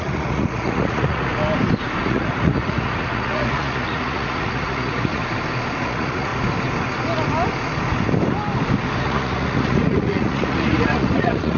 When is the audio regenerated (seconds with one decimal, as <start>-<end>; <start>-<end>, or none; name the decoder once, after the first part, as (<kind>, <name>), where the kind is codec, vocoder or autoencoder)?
0.0-1.3 (vocoder, Vocos); 2.0-5.2; 5.8-6.3; 9.0-11.6